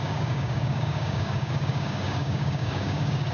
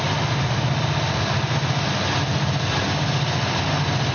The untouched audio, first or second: second